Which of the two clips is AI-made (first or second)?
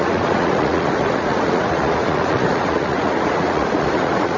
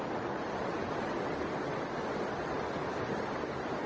first